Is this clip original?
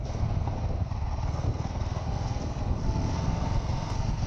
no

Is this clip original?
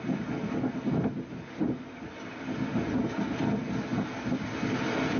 yes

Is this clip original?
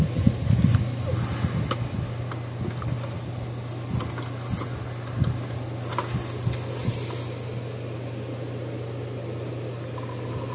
yes